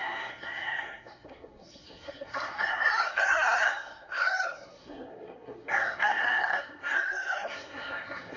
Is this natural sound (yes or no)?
no